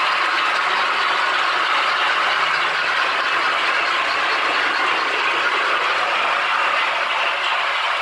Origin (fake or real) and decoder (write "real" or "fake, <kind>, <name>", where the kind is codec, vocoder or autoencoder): real